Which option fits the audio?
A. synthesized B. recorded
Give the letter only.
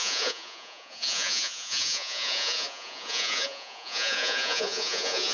A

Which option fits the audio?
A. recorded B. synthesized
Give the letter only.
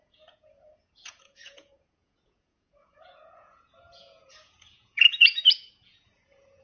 B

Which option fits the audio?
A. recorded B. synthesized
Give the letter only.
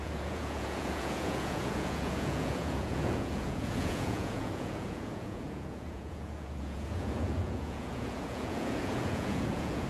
B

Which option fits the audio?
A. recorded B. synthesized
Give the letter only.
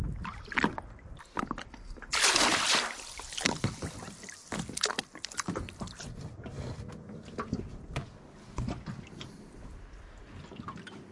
A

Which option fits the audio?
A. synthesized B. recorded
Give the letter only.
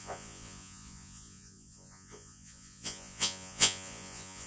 A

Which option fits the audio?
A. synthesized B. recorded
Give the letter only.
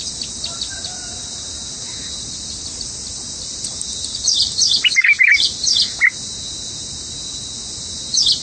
B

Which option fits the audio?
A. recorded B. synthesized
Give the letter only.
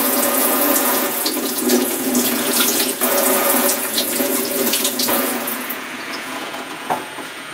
B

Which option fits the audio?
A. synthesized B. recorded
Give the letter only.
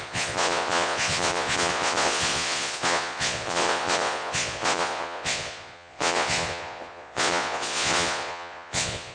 A